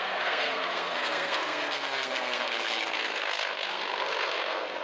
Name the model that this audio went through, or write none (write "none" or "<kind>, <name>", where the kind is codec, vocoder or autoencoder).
codec, SNAC